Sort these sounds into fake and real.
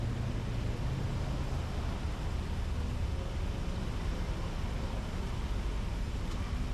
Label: real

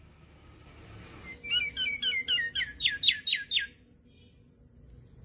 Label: real